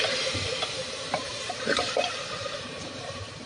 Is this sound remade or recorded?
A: remade